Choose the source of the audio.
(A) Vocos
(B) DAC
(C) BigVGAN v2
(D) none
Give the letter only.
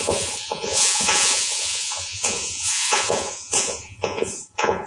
A